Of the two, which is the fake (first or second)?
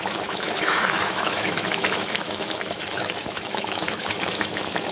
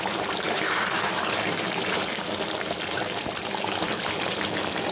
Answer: first